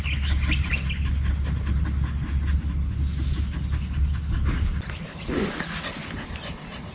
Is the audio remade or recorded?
recorded